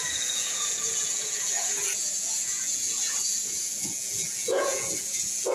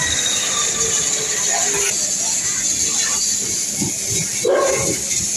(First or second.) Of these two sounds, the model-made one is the first